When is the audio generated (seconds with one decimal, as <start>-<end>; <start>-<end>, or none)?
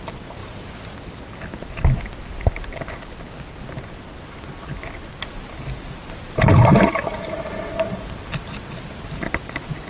none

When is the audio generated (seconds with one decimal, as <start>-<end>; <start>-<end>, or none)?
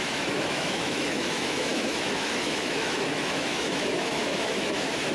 0.0-5.1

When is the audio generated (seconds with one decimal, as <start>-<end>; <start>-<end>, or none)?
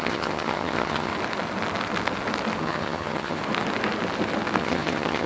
0.0-1.1; 2.6-3.4; 4.6-5.3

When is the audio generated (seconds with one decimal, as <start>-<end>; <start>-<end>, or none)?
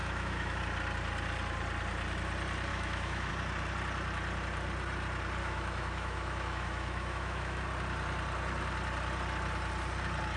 0.0-0.6; 2.7-3.3; 5.4-7.6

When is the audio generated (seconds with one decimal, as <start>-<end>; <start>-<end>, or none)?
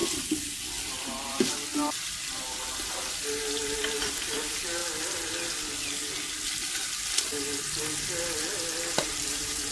4.0-4.8; 9.0-9.7